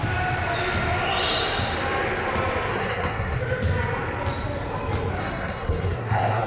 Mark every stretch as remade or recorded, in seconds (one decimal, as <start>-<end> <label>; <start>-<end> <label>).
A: 0.0-2.7 recorded; 2.7-3.4 remade; 3.4-5.2 recorded; 5.2-6.5 remade